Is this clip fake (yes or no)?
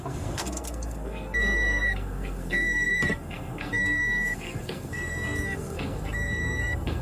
yes